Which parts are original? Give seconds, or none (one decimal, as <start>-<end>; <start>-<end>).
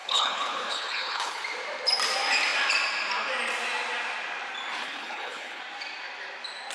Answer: 1.4-4.8; 5.6-6.7